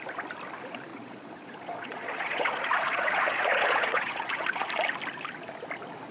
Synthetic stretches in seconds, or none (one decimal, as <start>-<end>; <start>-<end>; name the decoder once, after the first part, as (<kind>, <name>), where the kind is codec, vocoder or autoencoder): 0.9-4.6 (vocoder, Vocos)